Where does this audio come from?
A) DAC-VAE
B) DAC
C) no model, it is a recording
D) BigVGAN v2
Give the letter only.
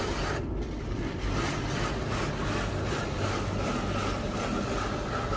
C